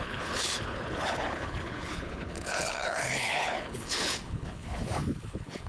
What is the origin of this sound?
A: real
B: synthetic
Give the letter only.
B